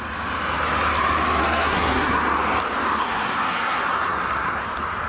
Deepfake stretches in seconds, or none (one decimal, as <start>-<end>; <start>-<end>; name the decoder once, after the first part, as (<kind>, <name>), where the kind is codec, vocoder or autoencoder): 1.4-2.2 (codec, SNAC); 3.0-4.6